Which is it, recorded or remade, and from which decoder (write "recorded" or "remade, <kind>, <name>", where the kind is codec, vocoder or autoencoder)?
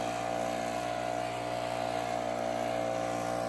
recorded